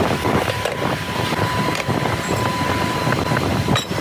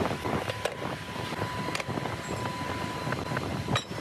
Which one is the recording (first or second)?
second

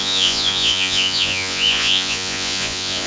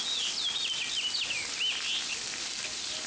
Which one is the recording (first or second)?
second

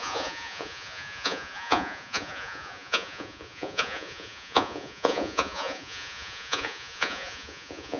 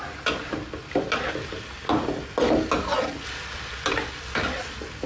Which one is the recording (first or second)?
second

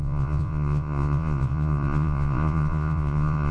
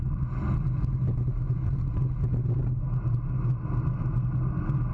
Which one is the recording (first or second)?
second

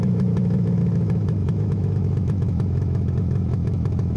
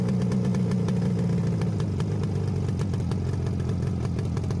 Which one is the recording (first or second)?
second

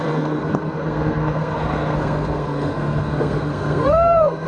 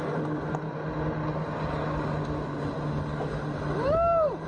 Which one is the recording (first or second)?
second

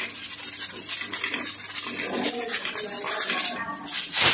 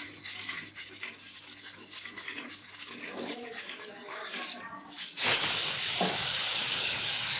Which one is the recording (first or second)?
first